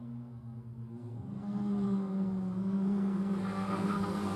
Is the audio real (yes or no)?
no